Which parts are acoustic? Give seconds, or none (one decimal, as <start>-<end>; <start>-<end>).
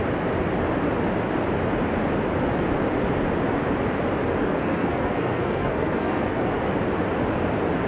0.0-4.4; 6.5-7.9